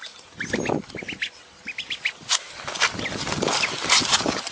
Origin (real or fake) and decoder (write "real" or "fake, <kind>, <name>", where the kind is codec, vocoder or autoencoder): fake, vocoder, BigVGAN v2